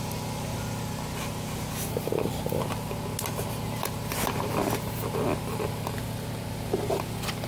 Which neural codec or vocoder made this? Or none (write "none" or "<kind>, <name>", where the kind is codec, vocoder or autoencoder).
none